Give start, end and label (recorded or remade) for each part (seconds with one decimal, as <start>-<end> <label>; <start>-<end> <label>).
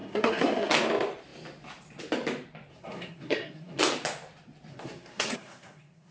0.0-0.7 remade; 0.7-2.7 recorded; 2.7-3.8 remade; 3.8-4.7 recorded; 4.7-6.1 remade